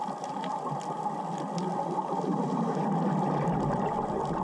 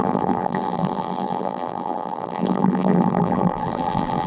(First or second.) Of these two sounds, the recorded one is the first